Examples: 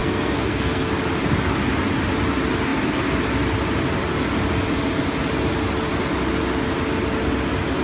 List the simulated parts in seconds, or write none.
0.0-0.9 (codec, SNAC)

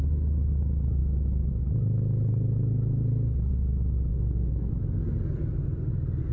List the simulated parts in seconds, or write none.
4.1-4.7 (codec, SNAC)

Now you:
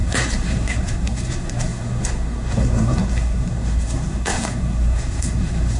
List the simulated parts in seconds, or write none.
0.0-5.8 (codec, SNAC)

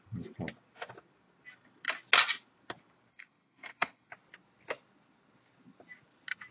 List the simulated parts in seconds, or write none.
3.1-4.1 (codec, SNAC)

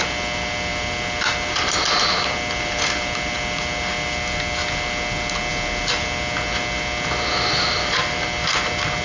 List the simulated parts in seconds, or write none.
none

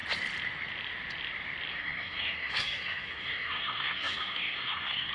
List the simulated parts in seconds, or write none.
1.7-5.1 (codec, SNAC)

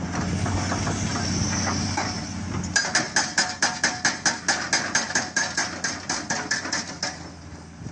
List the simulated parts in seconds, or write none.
none

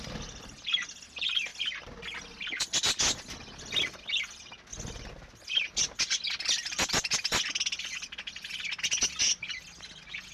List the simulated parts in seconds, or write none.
none